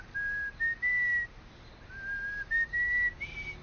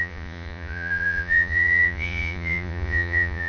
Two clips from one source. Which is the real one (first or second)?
first